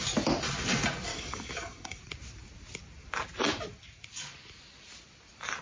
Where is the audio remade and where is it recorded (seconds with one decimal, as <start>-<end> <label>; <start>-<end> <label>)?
0.0-1.1 recorded; 1.1-2.0 remade; 2.0-5.6 recorded